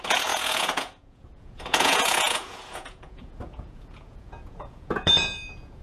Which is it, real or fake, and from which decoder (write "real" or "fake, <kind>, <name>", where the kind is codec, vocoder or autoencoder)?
fake, vocoder, Vocos